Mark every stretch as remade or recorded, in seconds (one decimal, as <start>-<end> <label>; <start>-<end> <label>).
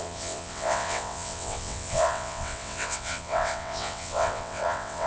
0.0-5.1 remade